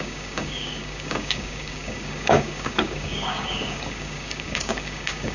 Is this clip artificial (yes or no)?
yes